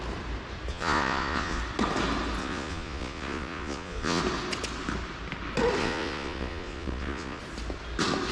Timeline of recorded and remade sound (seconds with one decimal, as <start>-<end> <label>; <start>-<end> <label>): 0.0-0.7 recorded; 0.7-1.6 remade; 1.6-2.4 recorded; 2.4-4.2 remade; 4.2-5.8 recorded; 5.8-7.4 remade; 7.4-8.3 recorded